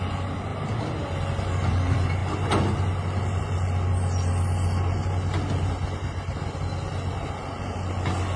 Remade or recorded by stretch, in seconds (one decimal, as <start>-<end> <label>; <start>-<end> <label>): 0.0-8.4 recorded